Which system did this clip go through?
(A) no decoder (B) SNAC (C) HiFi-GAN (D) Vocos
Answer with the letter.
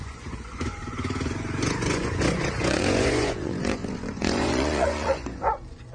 D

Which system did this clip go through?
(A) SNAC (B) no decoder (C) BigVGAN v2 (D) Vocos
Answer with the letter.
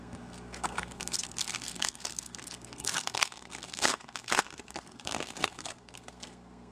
A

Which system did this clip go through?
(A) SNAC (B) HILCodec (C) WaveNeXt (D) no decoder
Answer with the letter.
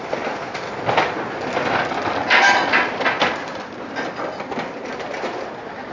D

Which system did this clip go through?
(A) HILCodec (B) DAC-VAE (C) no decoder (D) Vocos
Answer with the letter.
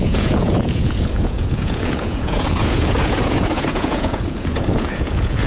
D